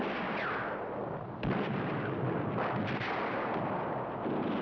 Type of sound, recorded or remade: recorded